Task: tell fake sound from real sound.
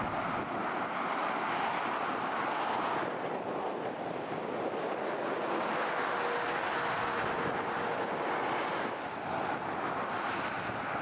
real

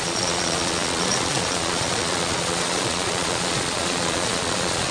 fake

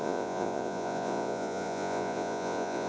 fake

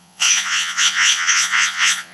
fake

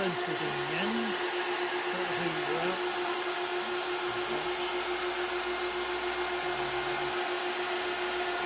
real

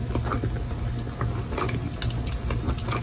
real